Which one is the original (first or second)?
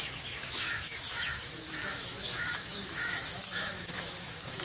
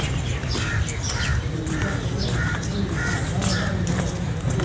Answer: second